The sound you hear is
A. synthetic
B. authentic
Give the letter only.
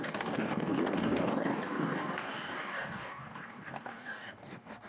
A